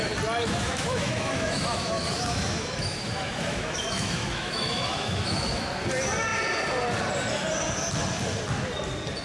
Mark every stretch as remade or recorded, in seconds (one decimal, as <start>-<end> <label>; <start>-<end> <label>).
0.0-0.4 recorded; 0.4-5.6 remade; 5.6-9.2 recorded